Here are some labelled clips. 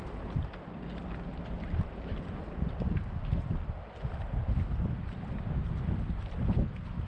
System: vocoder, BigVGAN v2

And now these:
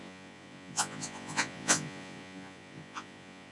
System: vocoder, Vocos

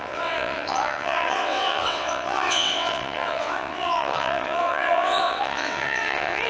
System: vocoder, WaveNeXt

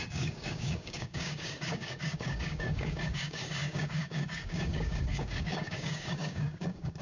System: codec, DAC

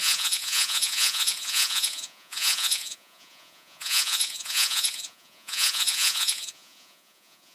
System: vocoder, Vocos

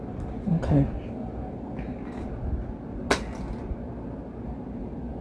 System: none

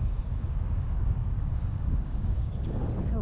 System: codec, DAC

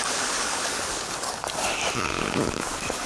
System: codec, DAC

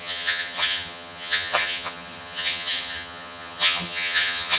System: vocoder, HiFi-GAN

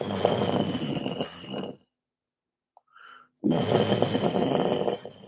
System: none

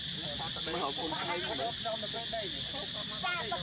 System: none